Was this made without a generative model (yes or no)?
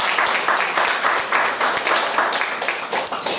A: yes